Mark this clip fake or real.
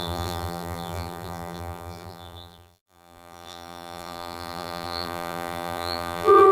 fake